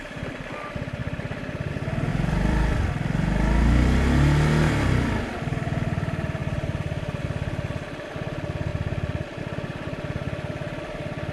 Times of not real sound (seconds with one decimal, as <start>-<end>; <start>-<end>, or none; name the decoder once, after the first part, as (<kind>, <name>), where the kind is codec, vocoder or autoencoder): 1.0-1.7 (vocoder, BigVGAN v2); 2.1-2.9; 6.4-7.2